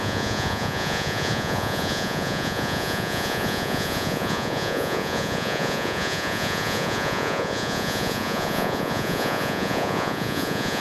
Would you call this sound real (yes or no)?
no